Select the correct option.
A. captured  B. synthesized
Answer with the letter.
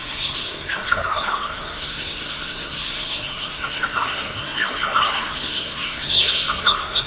B